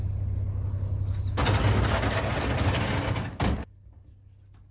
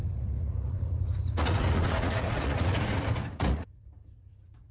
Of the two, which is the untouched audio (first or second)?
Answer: first